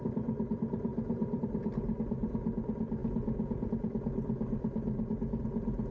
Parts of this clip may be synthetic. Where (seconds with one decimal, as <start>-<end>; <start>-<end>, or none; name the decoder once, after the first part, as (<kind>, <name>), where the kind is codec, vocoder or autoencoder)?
3.0-3.7 (vocoder, Vocos)